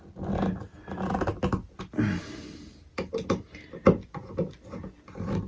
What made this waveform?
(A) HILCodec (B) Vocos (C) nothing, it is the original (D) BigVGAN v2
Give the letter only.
C